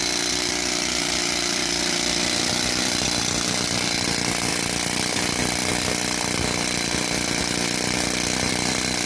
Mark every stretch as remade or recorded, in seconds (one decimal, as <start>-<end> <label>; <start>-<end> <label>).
0.0-9.1 recorded